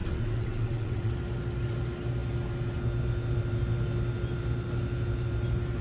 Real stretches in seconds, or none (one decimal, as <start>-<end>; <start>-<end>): 1.1-5.8